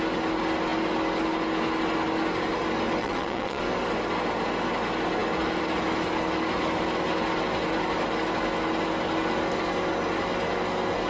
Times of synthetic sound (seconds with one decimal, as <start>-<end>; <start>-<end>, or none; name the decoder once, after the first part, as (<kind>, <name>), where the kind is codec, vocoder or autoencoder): 3.0-3.6 (vocoder, WaveNeXt)